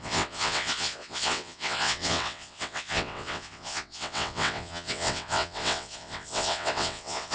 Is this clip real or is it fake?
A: fake